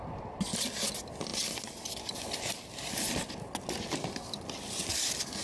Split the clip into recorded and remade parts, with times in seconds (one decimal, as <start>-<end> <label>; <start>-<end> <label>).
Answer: 0.0-5.4 recorded